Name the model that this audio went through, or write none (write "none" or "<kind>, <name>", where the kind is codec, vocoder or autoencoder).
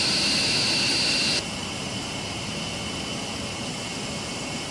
none